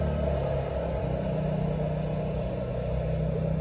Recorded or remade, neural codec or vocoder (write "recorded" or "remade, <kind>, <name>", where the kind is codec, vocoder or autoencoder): recorded